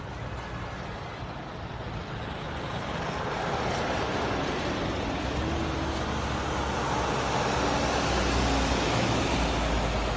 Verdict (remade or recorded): recorded